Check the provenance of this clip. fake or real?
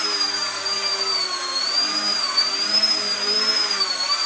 fake